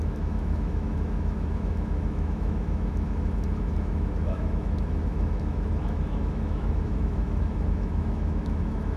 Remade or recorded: remade